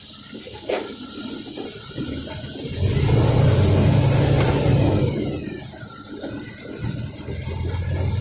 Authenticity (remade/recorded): recorded